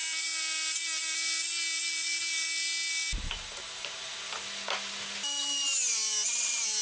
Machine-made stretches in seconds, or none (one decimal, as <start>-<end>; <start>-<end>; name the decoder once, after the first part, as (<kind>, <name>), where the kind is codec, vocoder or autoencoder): none